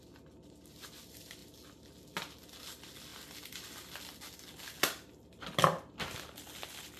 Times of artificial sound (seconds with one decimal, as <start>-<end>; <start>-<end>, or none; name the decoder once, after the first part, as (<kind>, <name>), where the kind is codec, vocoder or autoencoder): none